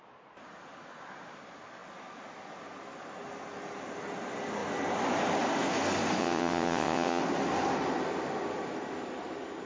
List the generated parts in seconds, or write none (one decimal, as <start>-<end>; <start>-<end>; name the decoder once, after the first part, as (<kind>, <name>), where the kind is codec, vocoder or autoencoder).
6.2-7.2 (vocoder, WaveNeXt)